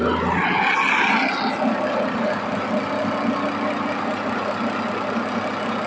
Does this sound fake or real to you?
real